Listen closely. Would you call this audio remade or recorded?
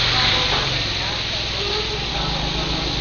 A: recorded